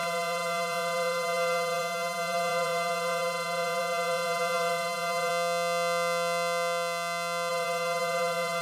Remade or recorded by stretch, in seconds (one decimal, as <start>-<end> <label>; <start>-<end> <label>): 0.0-5.3 remade; 5.3-7.5 recorded; 7.5-8.6 remade